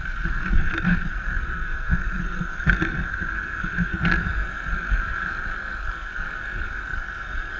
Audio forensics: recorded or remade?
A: remade